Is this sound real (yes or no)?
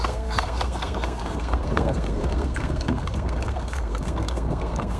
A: no